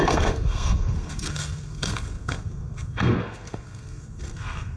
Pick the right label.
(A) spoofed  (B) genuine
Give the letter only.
A